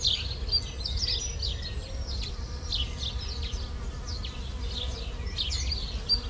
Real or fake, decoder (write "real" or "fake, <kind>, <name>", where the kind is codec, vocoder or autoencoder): real